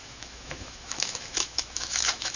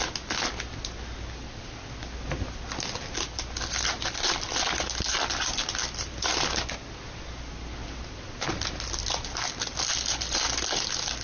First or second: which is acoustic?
second